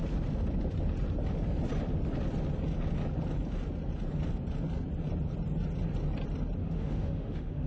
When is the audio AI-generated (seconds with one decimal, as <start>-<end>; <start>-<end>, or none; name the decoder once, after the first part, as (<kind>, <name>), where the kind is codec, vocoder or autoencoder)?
6.6-7.7 (autoencoder, DAC-VAE)